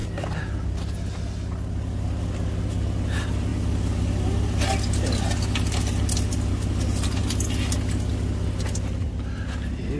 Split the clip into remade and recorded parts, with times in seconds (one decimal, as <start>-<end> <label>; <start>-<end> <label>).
0.0-10.0 recorded